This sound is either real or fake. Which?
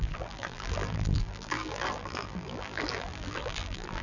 fake